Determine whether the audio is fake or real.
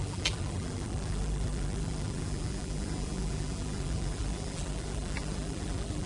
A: fake